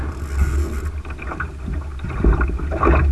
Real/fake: real